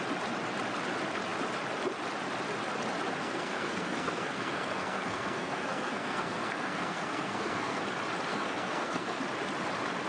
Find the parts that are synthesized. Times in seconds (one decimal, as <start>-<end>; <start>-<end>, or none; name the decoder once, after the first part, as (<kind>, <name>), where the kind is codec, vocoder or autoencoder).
3.2-7.8 (codec, SNAC); 8.3-9.2